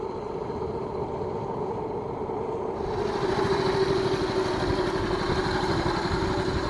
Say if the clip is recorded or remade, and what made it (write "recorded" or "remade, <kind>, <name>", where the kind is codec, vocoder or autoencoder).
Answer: recorded